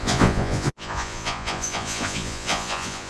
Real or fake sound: fake